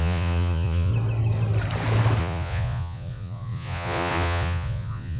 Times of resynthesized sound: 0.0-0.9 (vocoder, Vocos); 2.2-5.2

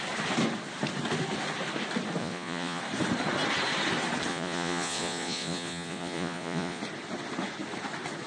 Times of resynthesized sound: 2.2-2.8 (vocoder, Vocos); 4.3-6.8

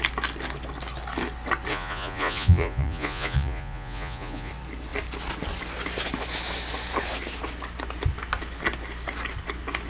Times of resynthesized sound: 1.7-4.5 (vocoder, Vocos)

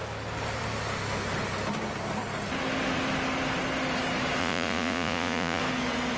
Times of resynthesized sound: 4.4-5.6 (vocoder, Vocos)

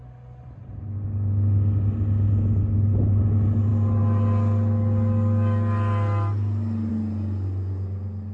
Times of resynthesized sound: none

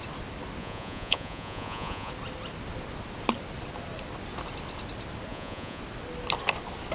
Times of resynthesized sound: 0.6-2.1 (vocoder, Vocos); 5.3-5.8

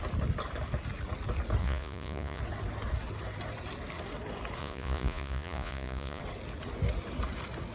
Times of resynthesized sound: 1.6-2.4 (vocoder, Vocos); 4.6-6.2

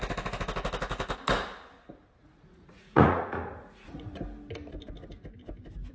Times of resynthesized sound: 2.2-4.1 (vocoder, Vocos)